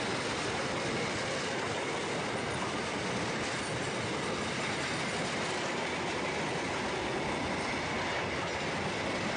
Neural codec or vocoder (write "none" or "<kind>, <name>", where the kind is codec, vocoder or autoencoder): none